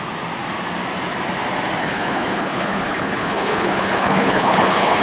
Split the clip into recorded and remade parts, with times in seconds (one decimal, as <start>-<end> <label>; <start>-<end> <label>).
0.0-1.8 recorded; 1.8-5.0 remade